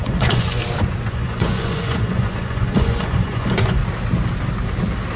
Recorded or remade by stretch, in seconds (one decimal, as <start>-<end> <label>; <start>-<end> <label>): 0.0-0.6 remade; 0.6-1.1 recorded; 1.1-3.8 remade; 3.8-5.2 recorded